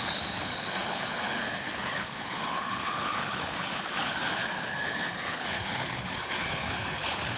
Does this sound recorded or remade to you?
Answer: remade